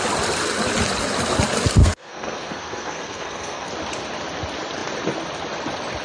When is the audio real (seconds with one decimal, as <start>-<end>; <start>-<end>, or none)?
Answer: 0.0-1.8; 3.7-6.0